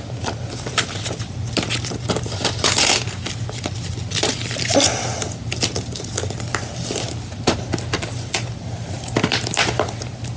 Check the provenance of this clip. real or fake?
real